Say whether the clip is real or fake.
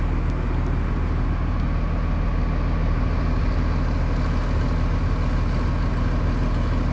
real